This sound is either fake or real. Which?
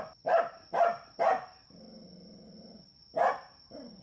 real